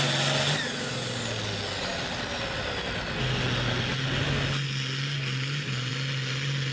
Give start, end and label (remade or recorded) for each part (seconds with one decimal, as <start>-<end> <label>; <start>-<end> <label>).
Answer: 0.0-6.7 recorded